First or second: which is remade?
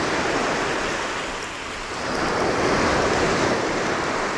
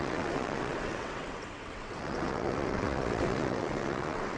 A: second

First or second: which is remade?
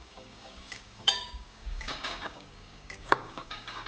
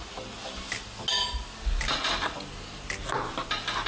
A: first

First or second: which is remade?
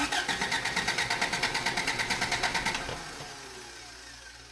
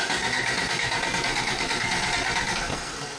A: second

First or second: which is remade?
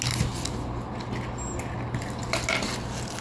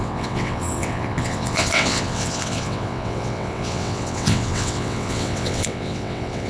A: second